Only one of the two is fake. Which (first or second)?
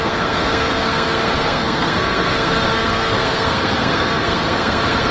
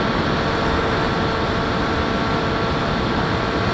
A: first